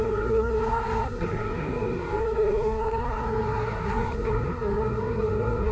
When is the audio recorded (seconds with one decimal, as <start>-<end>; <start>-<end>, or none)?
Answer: none